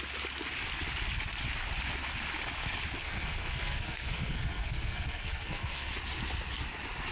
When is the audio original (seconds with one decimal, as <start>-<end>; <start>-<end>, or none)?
0.0-3.0; 5.9-7.1